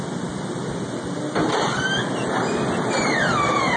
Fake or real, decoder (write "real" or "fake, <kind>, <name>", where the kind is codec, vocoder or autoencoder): real